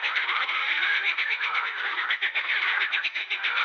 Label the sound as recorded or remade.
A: remade